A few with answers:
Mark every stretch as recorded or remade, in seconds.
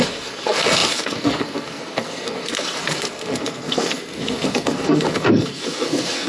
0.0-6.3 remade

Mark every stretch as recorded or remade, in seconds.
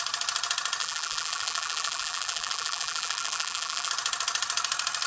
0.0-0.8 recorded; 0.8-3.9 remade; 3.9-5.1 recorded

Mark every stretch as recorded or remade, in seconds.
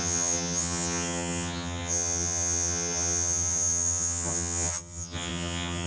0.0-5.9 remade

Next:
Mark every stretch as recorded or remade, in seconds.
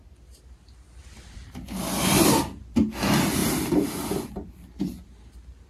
0.0-1.0 recorded; 1.0-2.4 remade; 2.4-3.4 recorded; 3.4-5.2 remade; 5.2-5.7 recorded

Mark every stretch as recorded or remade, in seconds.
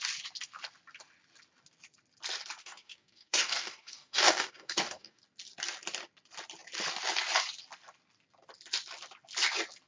0.0-2.6 recorded; 2.6-5.2 remade; 5.2-9.9 recorded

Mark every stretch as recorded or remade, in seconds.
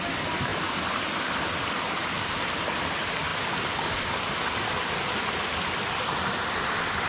0.0-7.1 remade